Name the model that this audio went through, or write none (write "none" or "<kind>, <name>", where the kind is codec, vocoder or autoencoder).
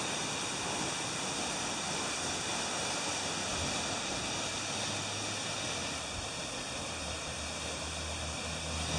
none